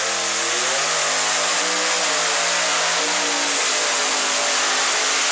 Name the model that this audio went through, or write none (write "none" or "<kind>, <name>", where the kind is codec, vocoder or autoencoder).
none